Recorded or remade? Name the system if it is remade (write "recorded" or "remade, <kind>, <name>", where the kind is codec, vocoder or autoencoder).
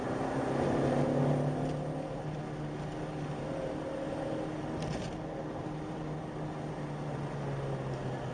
recorded